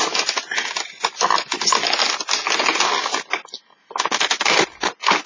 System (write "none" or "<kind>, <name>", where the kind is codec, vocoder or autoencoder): none